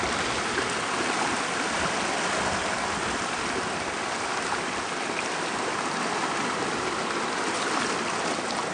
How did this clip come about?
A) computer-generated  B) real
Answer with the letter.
B